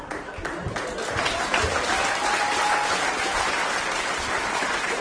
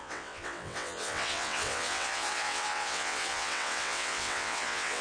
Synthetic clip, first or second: second